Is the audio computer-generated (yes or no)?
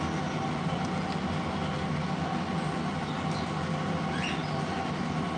no